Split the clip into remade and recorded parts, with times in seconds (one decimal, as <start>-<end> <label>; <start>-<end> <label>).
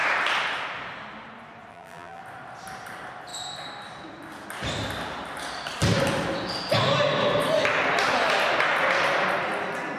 0.0-1.7 recorded; 1.7-2.2 remade; 2.2-10.0 recorded